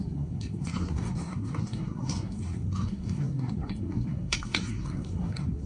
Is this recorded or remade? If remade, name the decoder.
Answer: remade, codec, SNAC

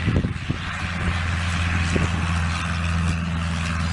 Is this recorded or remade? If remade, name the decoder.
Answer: recorded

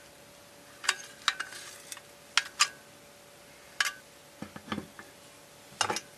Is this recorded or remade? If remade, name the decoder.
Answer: recorded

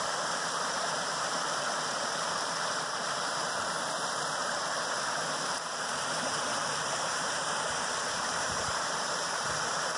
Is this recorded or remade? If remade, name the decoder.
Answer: remade, vocoder, BigVGAN v2